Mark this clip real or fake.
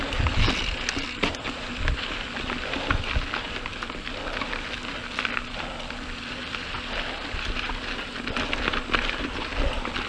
real